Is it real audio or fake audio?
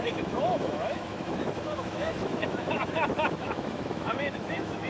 fake